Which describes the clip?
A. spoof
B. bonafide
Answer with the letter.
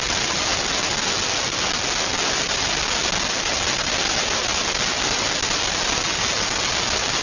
B